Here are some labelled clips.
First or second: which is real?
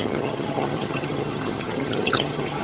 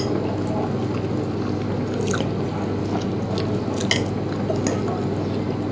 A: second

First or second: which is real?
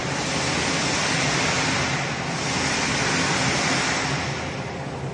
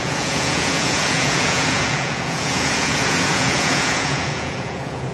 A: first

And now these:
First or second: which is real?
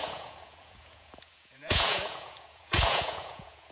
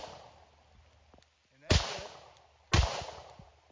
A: second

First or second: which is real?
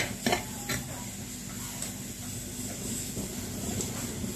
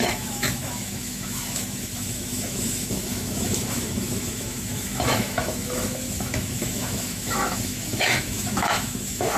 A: first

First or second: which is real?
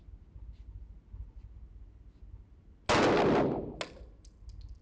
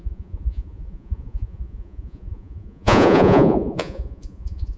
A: first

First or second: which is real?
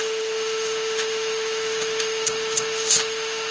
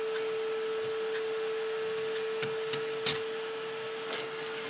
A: second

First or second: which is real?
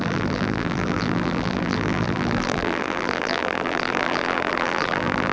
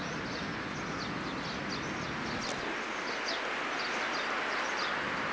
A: second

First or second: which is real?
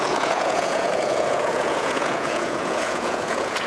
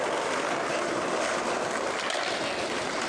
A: second